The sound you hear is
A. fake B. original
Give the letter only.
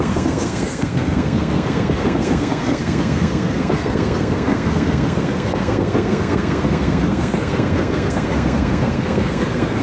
A